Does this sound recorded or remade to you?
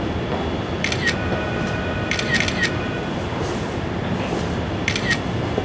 recorded